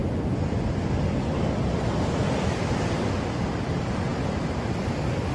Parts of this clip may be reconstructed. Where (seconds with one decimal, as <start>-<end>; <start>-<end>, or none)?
none